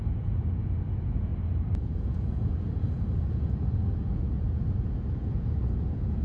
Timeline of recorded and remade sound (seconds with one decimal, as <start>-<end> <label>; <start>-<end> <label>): 0.0-1.3 remade; 1.3-1.8 recorded; 1.8-6.2 remade